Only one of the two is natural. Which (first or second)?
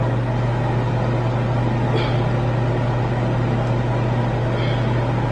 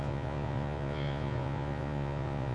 first